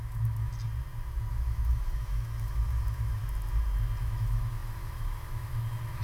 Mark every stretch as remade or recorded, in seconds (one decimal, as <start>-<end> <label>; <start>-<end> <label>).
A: 0.0-0.5 remade; 0.5-1.3 recorded; 1.3-3.2 remade; 3.2-4.0 recorded; 4.0-6.0 remade